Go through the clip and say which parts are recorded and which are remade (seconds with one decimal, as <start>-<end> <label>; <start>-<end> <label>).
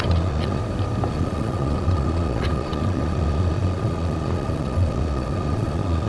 0.0-0.6 remade; 0.6-1.1 recorded; 1.1-6.1 remade